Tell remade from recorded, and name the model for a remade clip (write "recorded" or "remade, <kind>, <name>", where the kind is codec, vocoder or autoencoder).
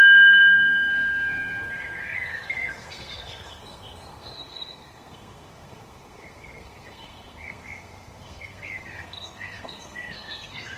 remade, codec, SNAC